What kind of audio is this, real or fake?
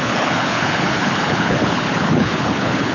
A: fake